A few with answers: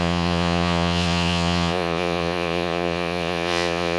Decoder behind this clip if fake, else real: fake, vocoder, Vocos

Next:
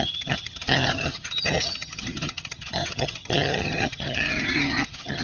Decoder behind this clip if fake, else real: fake, vocoder, HiFi-GAN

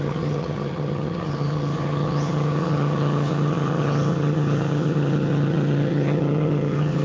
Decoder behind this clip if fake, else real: fake, vocoder, HiFi-GAN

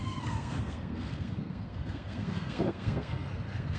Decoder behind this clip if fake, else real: fake, codec, SNAC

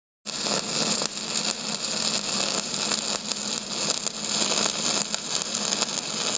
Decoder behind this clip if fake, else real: real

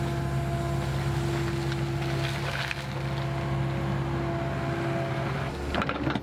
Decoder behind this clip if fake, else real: real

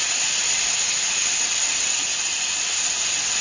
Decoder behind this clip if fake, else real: real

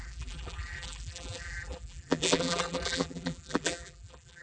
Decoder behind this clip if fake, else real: fake, vocoder, BigVGAN v2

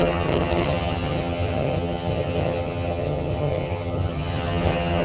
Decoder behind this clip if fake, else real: fake, vocoder, HiFi-GAN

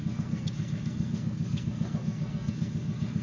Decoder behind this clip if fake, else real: fake, codec, SNAC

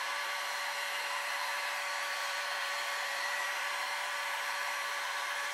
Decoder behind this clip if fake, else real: fake, vocoder, BigVGAN v2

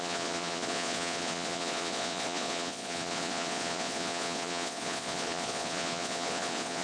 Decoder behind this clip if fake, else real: fake, vocoder, Vocos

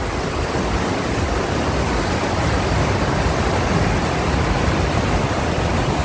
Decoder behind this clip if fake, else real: real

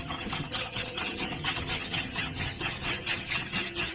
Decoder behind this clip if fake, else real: fake, vocoder, HiFi-GAN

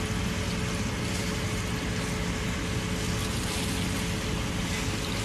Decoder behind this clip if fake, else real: real